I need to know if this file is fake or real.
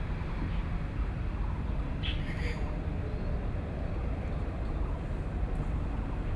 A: real